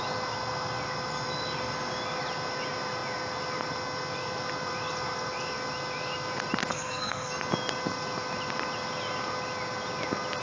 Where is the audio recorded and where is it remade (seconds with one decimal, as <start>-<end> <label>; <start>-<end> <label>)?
0.0-6.7 recorded; 6.7-7.3 remade; 7.3-10.4 recorded